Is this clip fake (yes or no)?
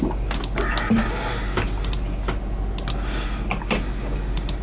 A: no